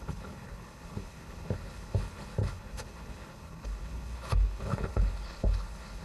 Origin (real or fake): fake